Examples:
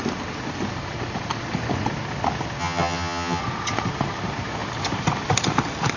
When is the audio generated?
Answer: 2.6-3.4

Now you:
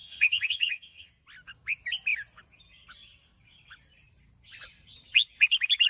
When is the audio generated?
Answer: 0.0-1.1

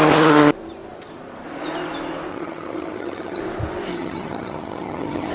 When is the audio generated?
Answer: 2.3-3.4; 3.9-5.3